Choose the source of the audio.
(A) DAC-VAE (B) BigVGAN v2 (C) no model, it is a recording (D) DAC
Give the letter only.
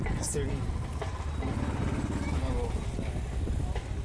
C